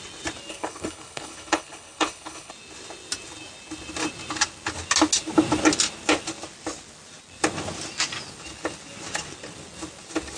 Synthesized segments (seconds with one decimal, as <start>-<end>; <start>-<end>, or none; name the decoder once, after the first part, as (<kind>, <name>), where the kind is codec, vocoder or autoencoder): 0.5-2.5 (codec, HILCodec)